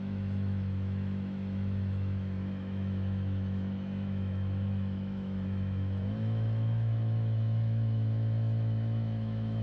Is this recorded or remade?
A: remade